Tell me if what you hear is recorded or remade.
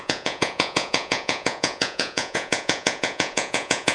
remade